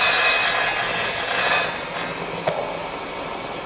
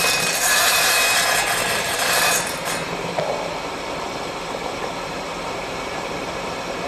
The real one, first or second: first